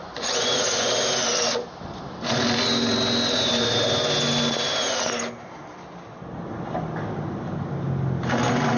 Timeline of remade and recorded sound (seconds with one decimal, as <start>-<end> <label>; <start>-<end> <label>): 0.0-0.9 remade; 0.9-8.8 recorded